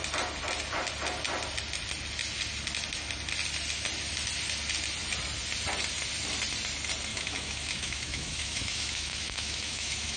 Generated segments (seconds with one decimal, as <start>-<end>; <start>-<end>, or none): 7.1-10.2